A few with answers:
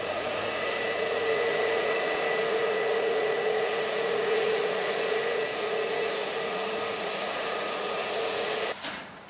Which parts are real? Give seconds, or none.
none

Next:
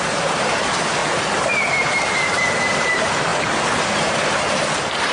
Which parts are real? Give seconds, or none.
1.0-1.7; 3.3-3.8